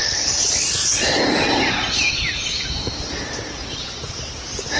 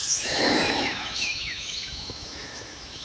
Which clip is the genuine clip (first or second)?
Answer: first